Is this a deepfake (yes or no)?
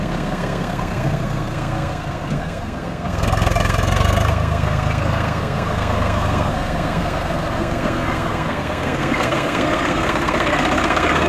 yes